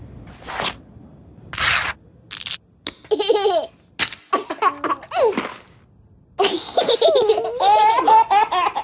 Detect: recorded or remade recorded